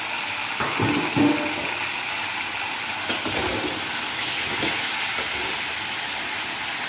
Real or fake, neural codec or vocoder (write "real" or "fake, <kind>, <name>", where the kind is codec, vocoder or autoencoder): real